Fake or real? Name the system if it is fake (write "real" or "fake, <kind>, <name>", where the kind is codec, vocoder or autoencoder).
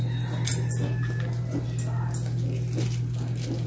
real